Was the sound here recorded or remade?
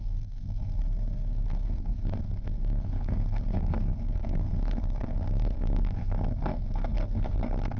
remade